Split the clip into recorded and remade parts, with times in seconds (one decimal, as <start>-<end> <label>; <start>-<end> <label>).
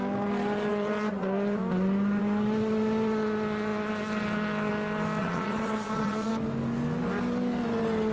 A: 0.0-5.2 recorded; 5.2-6.3 remade; 6.3-8.1 recorded